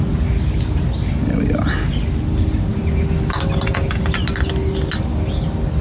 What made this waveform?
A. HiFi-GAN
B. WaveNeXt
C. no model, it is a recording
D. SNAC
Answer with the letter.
C